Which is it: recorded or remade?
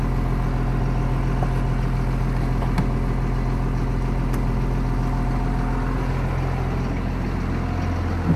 recorded